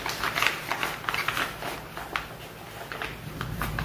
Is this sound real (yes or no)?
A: yes